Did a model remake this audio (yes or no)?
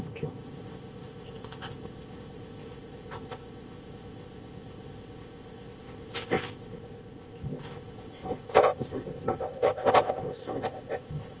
yes